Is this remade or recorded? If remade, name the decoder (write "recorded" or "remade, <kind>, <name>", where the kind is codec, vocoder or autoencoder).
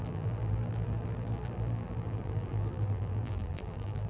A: remade, vocoder, BigVGAN v2